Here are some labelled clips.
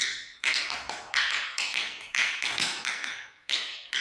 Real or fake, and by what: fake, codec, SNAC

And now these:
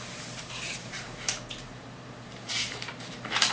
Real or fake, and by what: fake, vocoder, BigVGAN v2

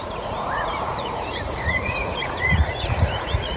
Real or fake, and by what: fake, vocoder, Vocos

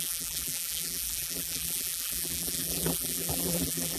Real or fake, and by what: fake, vocoder, BigVGAN v2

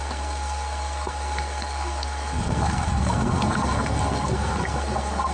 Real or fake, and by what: fake, codec, SNAC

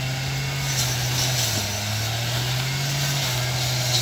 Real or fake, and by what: real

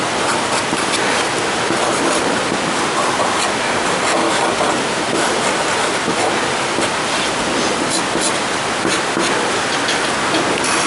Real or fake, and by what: real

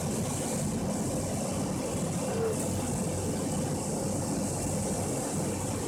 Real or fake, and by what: real